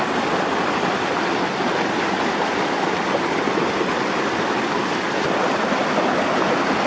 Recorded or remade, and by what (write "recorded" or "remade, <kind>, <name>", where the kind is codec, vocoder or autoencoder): recorded